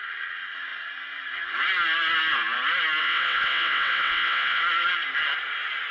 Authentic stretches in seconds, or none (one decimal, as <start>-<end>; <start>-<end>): 0.0-3.0; 4.6-5.9